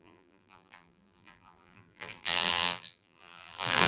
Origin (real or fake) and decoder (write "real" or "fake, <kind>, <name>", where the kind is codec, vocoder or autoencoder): fake, vocoder, BigVGAN v2